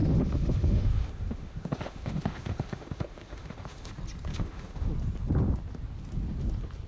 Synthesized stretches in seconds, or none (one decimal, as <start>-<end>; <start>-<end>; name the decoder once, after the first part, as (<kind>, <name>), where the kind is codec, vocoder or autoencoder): 0.0-3.9 (autoencoder, DAC-VAE); 4.3-4.9